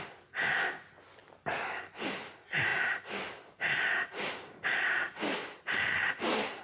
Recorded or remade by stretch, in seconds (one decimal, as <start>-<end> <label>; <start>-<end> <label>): 0.0-6.6 recorded